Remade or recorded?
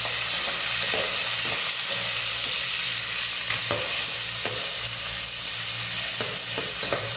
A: recorded